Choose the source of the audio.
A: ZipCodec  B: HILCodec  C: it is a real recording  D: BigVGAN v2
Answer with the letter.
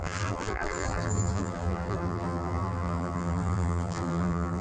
D